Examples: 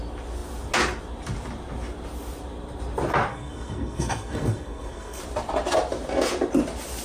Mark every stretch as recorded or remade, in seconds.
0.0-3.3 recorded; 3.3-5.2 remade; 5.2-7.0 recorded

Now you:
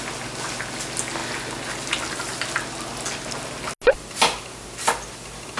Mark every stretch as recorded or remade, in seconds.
0.0-5.6 recorded

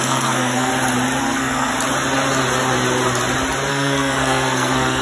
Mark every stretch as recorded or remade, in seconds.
0.0-0.7 remade; 0.7-1.2 recorded; 1.2-1.7 remade; 1.7-3.7 recorded; 3.7-5.0 remade